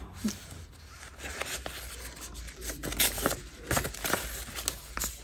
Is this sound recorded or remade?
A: recorded